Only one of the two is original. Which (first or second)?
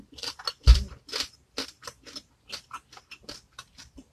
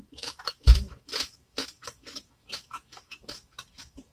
first